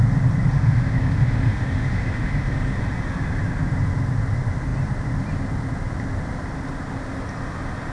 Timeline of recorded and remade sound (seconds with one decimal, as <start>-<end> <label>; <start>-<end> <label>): 0.0-0.6 recorded; 0.6-2.8 remade; 2.8-7.9 recorded